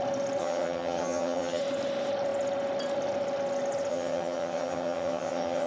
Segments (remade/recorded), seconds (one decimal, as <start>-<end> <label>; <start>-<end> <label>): 0.0-0.4 recorded; 0.4-1.6 remade; 1.6-3.9 recorded; 3.9-5.7 remade